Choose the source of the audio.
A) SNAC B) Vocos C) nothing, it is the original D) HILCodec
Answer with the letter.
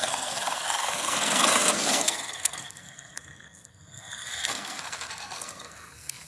A